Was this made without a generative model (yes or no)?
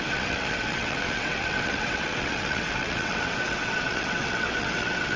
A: no